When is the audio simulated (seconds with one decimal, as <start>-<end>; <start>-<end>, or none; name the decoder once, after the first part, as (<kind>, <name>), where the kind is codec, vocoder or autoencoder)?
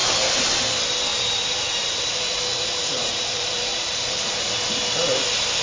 1.1-4.5 (vocoder, BigVGAN v2)